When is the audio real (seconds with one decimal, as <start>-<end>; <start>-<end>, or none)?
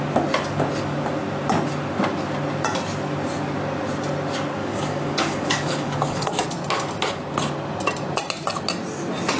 0.0-4.6; 6.3-9.4